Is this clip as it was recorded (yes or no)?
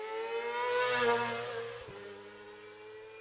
yes